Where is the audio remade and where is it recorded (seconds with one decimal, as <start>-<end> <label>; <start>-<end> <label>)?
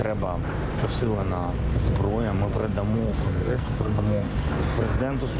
0.0-3.1 recorded; 3.1-4.5 remade; 4.5-5.4 recorded